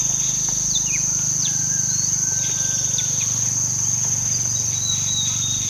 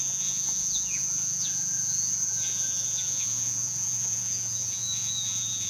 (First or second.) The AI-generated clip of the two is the second